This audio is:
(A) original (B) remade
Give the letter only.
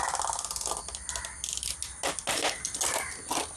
A